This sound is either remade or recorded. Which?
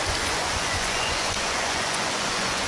remade